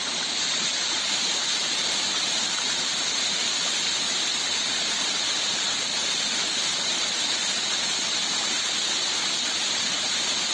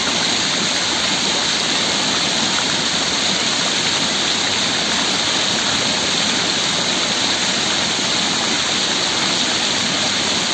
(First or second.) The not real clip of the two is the first